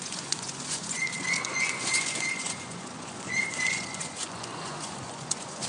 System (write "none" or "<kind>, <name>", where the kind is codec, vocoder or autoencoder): vocoder, Vocos